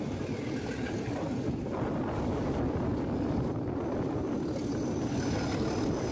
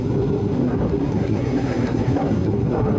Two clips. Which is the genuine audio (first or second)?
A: first